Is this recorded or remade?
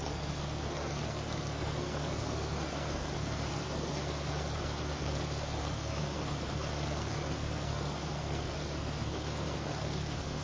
remade